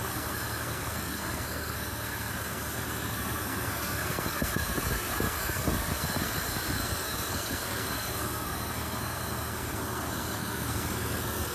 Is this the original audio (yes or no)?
no